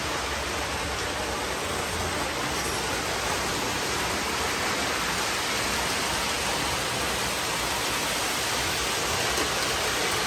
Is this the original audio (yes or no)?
yes